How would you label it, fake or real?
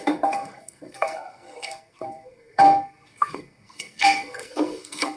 fake